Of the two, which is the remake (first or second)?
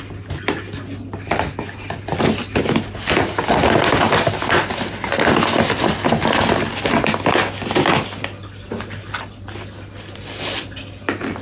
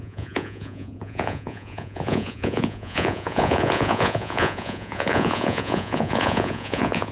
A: second